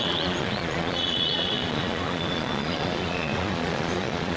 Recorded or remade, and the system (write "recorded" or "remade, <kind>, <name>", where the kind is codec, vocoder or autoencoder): remade, vocoder, Vocos